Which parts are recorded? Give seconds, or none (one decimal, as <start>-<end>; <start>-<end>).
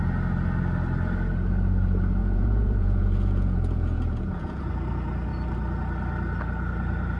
0.0-2.2; 4.7-7.2